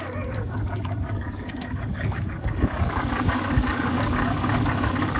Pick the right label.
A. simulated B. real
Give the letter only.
A